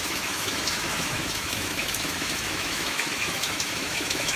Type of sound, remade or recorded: remade